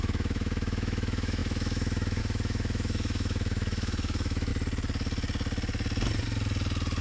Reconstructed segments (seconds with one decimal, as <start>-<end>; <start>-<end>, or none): 0.0-4.5